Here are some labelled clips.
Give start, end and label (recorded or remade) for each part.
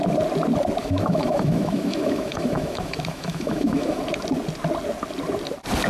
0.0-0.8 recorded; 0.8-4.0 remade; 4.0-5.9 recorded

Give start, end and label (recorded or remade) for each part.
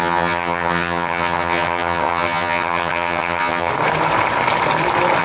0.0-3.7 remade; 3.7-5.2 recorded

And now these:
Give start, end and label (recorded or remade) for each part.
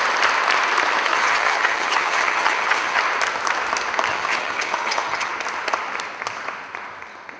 0.0-1.1 recorded; 1.1-3.0 remade; 3.0-4.1 recorded; 4.1-5.3 remade; 5.3-7.4 recorded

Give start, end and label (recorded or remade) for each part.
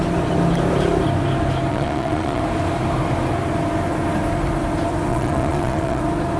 0.0-1.7 recorded; 1.7-2.4 remade; 2.4-5.1 recorded; 5.1-6.0 remade; 6.0-6.4 recorded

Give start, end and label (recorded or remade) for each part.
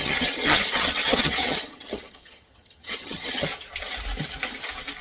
0.0-3.5 remade; 3.5-5.0 recorded